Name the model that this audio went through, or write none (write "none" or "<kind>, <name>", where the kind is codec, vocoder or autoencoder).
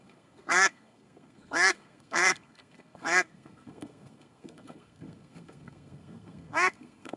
codec, SNAC